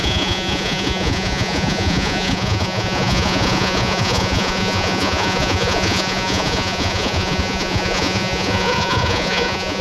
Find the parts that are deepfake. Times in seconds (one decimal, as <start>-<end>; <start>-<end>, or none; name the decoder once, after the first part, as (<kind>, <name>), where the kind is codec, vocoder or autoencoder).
0.0-9.8 (vocoder, Vocos)